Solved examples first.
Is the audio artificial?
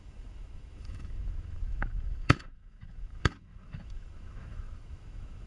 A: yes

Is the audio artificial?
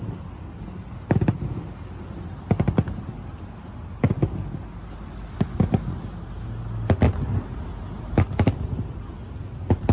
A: no